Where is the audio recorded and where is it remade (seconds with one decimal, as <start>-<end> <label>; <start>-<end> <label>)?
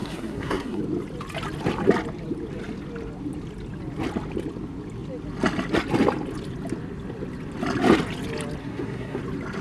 0.0-0.8 remade; 0.8-8.6 recorded; 8.6-9.2 remade; 9.2-9.6 recorded